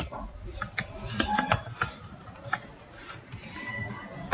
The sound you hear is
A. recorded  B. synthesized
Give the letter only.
A